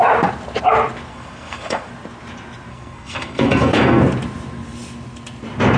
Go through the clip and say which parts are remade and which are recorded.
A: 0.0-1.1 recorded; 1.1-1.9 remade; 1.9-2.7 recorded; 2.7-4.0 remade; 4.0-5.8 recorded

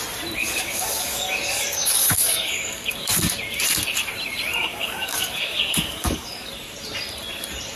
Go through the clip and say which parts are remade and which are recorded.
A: 0.0-0.4 recorded; 0.4-3.3 remade; 3.3-4.6 recorded; 4.6-6.5 remade; 6.5-7.8 recorded

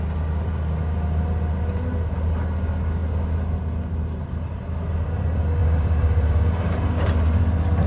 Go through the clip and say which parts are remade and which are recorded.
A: 0.0-5.6 recorded; 5.6-6.4 remade; 6.4-7.9 recorded

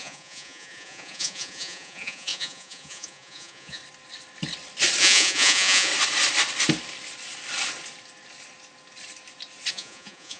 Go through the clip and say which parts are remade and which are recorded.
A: 0.0-3.8 remade; 3.8-5.0 recorded; 5.0-5.9 remade; 5.9-9.7 recorded; 9.7-10.4 remade